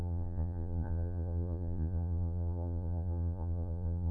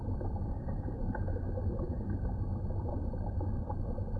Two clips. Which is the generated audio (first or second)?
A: first